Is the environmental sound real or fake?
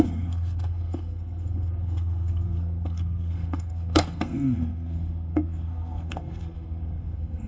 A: fake